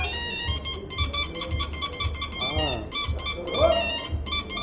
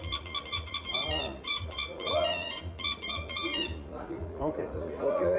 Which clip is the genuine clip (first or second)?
first